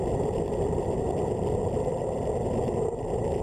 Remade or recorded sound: recorded